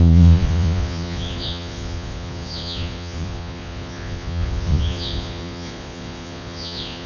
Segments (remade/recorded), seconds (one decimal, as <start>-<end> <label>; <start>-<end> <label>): 0.0-7.1 remade